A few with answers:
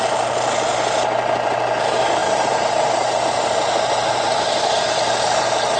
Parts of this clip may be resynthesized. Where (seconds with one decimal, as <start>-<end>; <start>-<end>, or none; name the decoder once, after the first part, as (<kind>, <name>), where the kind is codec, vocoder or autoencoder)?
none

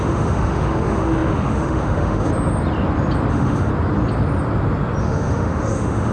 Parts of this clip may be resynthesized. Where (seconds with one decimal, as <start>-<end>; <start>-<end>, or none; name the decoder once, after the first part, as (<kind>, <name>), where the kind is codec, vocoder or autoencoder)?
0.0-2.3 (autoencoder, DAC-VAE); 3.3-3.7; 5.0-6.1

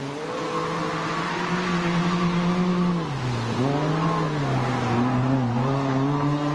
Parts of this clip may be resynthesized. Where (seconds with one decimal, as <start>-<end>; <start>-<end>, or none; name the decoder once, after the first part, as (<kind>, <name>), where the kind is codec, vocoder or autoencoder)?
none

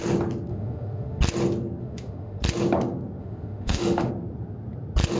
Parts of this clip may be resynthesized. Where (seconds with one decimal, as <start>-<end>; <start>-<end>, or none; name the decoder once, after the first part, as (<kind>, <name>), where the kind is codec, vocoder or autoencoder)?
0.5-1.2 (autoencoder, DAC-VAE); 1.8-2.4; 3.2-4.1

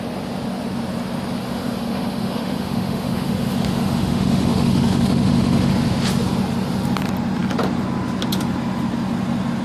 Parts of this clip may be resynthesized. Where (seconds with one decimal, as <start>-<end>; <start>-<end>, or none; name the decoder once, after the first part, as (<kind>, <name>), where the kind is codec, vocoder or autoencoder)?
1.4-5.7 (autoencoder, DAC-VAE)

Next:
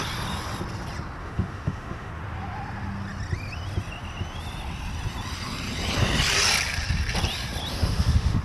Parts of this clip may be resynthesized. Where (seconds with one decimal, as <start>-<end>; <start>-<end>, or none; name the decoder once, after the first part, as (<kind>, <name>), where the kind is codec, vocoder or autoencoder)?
1.2-2.1 (autoencoder, DAC-VAE); 7.7-8.4

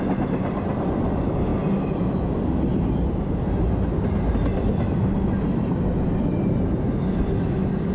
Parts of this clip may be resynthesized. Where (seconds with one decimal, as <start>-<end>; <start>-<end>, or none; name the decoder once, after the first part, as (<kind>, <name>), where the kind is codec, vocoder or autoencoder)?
none